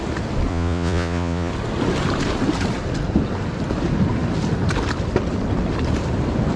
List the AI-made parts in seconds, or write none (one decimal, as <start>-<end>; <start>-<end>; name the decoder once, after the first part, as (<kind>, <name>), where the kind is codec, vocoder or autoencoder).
0.5-1.5 (vocoder, Vocos)